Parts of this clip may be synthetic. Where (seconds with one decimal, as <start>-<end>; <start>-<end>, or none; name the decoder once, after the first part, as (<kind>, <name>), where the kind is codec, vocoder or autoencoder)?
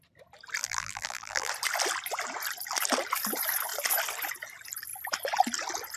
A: 0.6-1.5 (vocoder, BigVGAN v2)